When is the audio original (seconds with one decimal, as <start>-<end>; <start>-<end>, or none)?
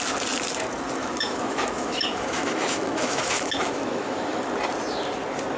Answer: 0.0-1.0; 4.4-5.6